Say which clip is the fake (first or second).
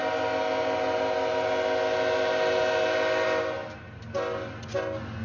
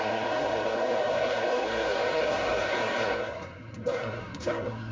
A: second